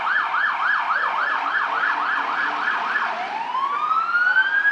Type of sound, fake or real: real